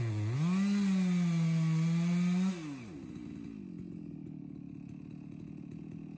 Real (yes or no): yes